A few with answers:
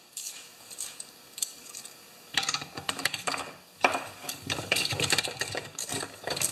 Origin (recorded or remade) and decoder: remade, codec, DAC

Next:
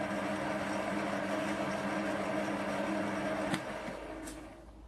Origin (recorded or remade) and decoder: recorded